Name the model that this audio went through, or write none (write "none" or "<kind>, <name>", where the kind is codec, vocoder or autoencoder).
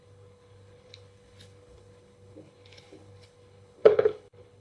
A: codec, HILCodec